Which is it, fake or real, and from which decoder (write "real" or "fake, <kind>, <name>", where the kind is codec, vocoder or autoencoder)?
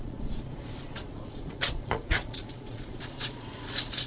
fake, vocoder, Vocos